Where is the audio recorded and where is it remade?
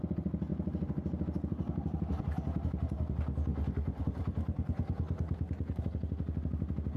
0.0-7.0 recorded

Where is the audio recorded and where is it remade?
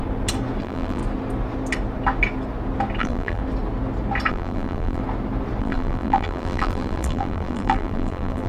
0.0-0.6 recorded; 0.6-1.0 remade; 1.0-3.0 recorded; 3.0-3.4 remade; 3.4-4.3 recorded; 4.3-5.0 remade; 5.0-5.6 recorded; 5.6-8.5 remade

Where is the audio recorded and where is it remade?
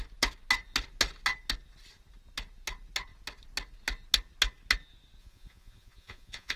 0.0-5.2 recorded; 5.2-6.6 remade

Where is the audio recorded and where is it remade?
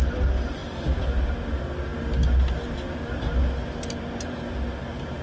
0.0-5.2 recorded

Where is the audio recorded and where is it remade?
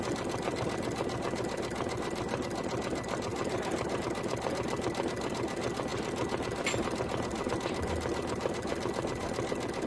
0.0-3.3 recorded; 3.3-4.0 remade; 4.0-9.9 recorded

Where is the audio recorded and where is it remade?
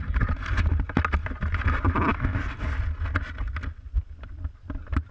0.0-5.1 recorded